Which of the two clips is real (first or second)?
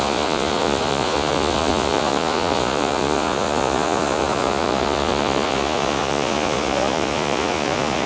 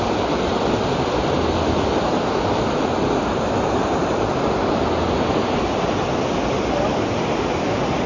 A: second